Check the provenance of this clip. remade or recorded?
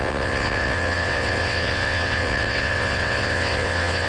remade